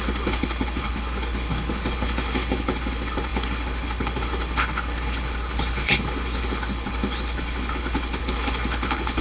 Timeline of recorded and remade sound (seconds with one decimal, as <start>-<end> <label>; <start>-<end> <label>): 0.0-9.2 remade